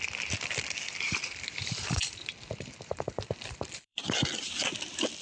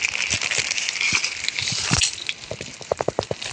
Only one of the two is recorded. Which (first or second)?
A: second